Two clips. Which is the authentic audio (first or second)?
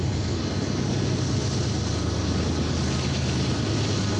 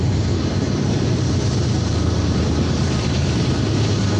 first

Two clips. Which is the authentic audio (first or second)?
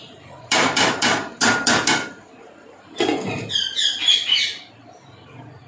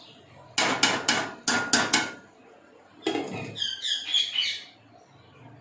second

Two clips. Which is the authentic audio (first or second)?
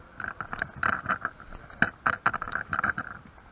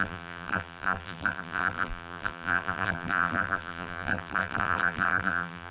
first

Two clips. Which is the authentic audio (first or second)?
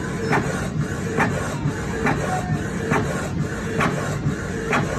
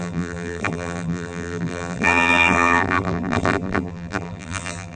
first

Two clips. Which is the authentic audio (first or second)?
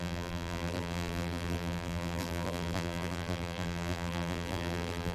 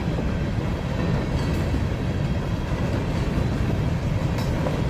second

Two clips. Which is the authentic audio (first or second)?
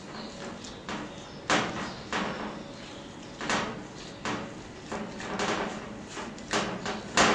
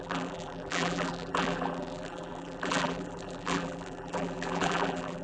first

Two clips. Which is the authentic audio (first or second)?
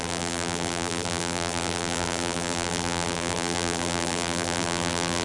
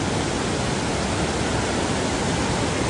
second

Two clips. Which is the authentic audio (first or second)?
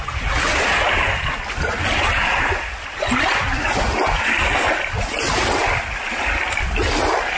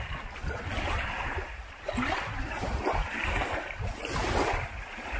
first